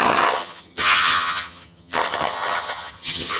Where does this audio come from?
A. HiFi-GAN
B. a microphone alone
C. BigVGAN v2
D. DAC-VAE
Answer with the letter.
A